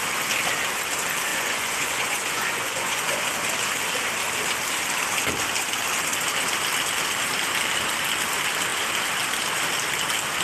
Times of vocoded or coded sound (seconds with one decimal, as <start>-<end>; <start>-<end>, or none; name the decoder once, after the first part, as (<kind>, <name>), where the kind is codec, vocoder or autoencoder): 1.3-3.3 (vocoder, Vocos)